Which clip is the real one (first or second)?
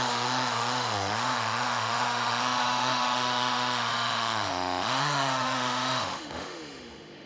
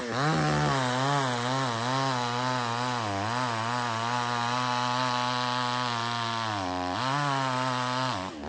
second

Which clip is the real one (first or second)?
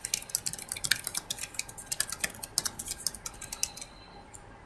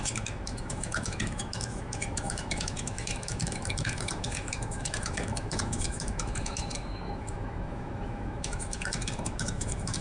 first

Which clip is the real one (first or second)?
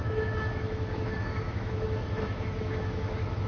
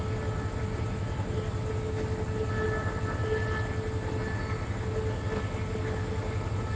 second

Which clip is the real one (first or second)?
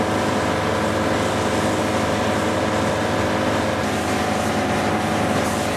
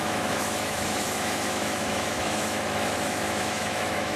first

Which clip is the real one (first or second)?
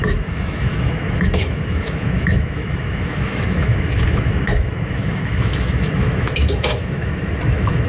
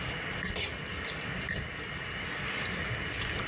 second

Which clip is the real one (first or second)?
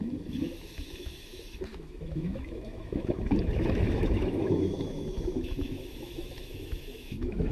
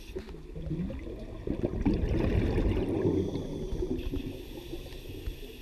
second